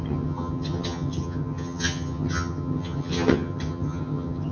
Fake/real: fake